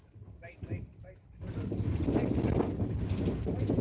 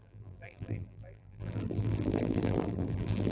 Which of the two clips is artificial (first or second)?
second